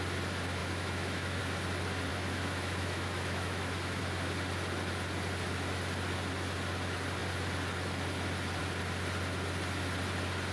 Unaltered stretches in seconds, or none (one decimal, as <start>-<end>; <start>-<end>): 0.0-0.6; 1.4-2.1; 4.0-10.5